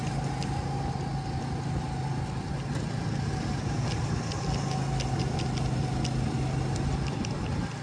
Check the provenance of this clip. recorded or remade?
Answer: recorded